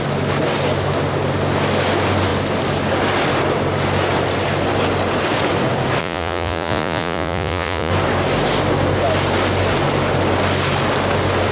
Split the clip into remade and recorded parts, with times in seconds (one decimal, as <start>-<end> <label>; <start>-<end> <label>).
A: 0.0-6.0 recorded; 6.0-7.9 remade; 7.9-11.5 recorded